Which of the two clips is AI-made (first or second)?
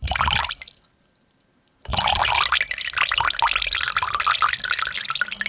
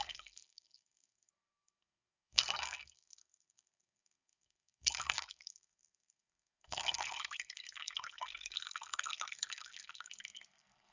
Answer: second